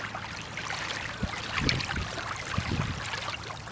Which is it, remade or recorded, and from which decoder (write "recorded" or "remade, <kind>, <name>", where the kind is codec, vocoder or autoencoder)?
recorded